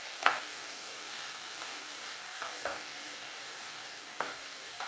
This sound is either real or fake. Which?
fake